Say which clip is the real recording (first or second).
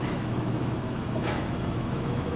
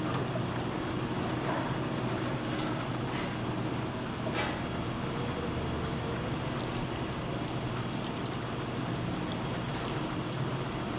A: second